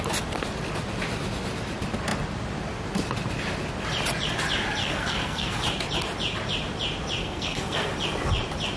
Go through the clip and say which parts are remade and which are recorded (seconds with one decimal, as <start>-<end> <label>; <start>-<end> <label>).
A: 0.0-4.8 recorded; 4.8-5.6 remade; 5.6-7.2 recorded; 7.2-7.9 remade; 7.9-8.8 recorded